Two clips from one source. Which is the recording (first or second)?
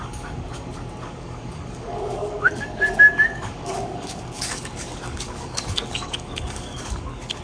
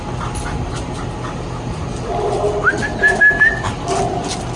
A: second